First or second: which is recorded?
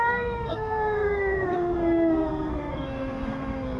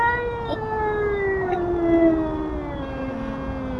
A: second